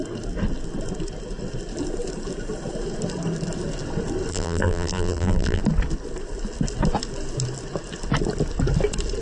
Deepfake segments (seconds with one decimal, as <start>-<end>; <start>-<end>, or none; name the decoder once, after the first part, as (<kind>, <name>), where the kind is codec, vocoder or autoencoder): 4.3-5.6 (vocoder, BigVGAN v2)